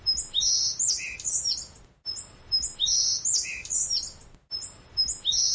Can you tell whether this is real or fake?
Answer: real